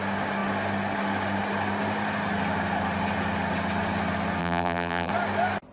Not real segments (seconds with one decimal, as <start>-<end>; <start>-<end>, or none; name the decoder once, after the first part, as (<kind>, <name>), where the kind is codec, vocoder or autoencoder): 4.4-5.1 (vocoder, BigVGAN v2)